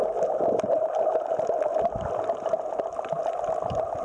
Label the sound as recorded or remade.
recorded